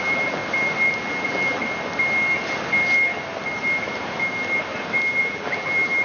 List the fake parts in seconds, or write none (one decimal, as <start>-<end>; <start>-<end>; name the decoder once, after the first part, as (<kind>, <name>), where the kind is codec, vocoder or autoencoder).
0.0-0.4 (vocoder, BigVGAN v2); 1.0-1.6; 5.2-6.0